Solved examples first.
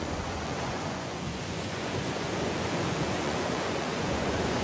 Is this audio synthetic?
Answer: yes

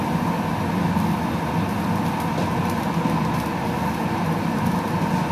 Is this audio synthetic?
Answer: no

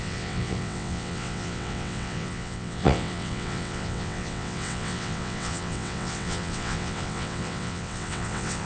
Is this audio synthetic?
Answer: yes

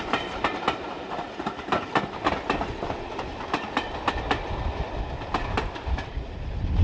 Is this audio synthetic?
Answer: no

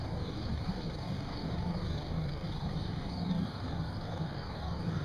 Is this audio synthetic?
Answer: yes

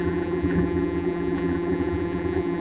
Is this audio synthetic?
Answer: yes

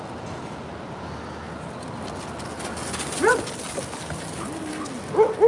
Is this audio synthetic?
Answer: no